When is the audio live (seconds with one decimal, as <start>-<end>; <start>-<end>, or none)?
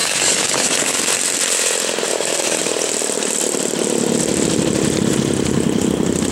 1.1-2.1; 2.6-6.3